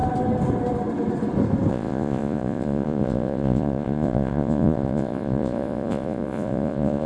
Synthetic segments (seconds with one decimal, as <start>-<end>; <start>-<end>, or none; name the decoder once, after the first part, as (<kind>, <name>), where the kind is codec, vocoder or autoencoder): 1.7-7.1 (vocoder, Vocos)